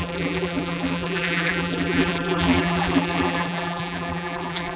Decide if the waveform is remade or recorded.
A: remade